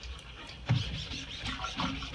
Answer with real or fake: real